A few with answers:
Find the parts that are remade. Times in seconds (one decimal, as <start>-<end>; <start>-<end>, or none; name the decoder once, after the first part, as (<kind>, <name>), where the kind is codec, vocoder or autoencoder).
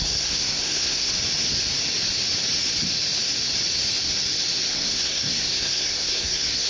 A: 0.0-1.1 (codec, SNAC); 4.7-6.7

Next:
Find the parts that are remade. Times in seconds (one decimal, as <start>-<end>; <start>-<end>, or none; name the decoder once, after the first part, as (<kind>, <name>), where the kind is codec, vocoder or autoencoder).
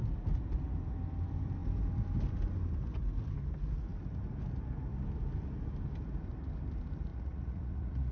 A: 7.1-8.1 (vocoder, Vocos)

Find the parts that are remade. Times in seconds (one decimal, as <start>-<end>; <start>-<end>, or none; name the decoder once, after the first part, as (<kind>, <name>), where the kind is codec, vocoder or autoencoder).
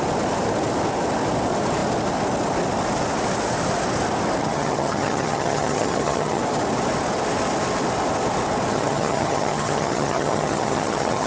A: 4.4-6.4 (vocoder, HiFi-GAN); 8.7-11.3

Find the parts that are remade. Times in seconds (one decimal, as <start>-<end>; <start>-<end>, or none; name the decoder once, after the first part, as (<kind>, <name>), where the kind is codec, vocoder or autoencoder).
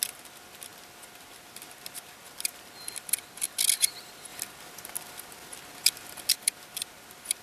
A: none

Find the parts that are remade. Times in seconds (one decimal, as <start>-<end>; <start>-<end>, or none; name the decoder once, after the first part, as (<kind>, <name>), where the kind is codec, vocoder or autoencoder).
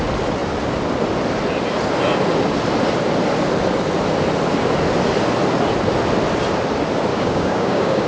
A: 7.1-8.1 (codec, DAC)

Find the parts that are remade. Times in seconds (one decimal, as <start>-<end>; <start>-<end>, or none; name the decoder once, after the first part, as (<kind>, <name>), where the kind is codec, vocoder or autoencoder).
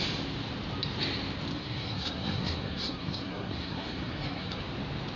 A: 1.5-4.6 (codec, SNAC)